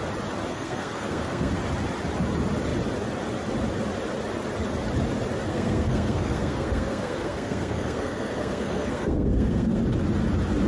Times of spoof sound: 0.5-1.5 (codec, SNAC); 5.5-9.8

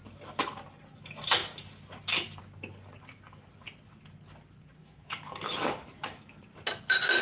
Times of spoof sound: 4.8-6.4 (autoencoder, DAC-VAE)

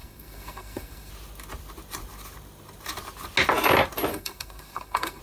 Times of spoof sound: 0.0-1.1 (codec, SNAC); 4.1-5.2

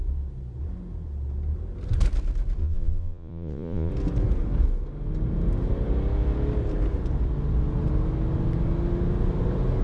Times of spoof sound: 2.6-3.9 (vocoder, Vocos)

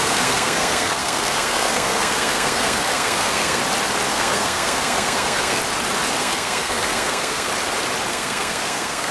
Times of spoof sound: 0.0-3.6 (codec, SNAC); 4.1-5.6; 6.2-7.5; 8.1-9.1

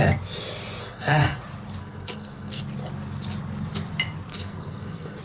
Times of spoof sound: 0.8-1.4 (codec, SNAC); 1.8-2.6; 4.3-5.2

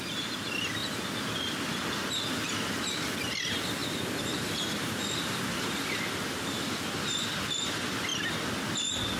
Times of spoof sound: 3.8-7.2 (vocoder, BigVGAN v2)